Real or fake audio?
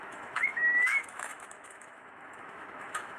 fake